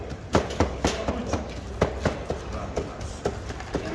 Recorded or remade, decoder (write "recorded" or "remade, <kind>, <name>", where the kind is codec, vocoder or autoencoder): recorded